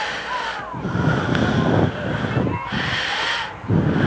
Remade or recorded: recorded